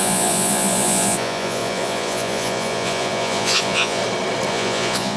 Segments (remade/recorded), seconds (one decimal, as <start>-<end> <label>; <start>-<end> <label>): 0.0-4.0 remade; 4.0-4.5 recorded; 4.5-5.2 remade